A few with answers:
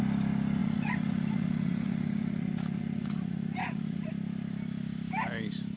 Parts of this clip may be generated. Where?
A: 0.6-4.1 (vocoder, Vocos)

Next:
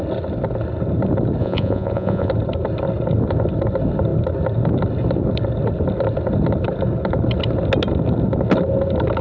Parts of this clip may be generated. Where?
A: 1.4-2.3 (vocoder, Vocos)

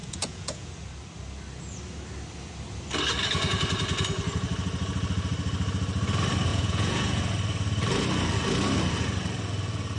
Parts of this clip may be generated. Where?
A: 0.0-0.7 (vocoder, Vocos); 6.5-7.2

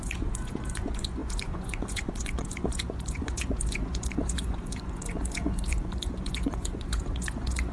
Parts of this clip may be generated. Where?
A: 0.0-7.7 (vocoder, Vocos)

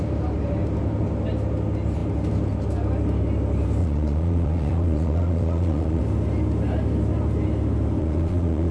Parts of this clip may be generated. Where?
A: 3.8-6.0 (vocoder, Vocos); 8.0-8.7

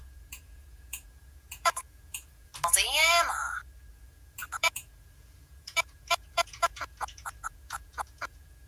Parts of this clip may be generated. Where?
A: 0.0-2.5 (vocoder, Vocos); 3.9-8.7